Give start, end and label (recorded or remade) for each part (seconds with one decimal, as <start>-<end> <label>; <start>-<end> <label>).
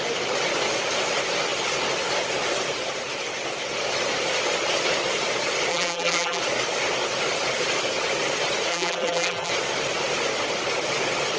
0.0-5.7 recorded; 5.7-6.4 remade; 6.4-8.7 recorded; 8.7-9.5 remade; 9.5-11.4 recorded